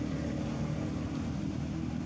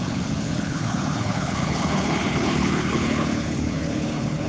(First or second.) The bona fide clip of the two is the first